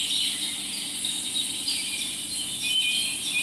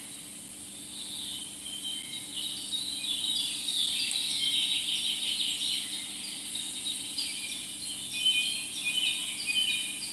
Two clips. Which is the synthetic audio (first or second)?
first